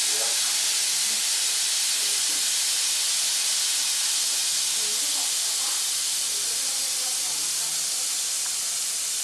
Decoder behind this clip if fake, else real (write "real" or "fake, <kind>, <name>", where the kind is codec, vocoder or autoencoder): real